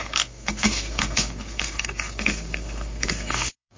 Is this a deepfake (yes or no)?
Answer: yes